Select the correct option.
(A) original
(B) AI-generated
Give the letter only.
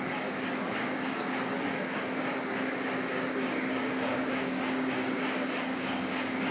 B